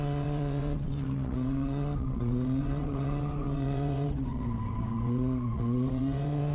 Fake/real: fake